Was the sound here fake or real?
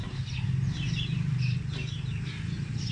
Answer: real